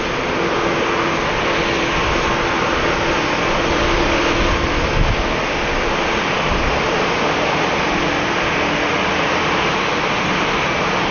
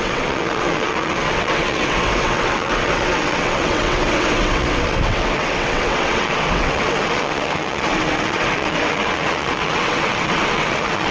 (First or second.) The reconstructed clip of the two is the second